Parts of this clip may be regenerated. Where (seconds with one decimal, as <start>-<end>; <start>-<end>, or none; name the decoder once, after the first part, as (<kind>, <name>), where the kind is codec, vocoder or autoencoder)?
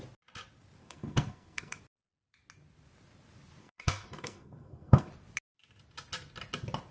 0.8-1.8 (codec, SNAC); 3.6-5.1